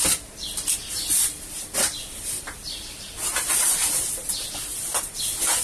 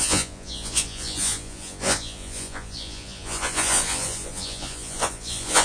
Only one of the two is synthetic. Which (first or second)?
second